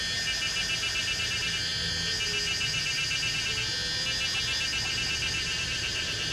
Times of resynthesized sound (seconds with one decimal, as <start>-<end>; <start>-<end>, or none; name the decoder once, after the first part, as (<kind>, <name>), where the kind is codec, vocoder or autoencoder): none